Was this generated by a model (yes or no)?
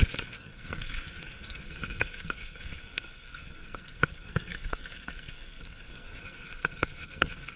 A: yes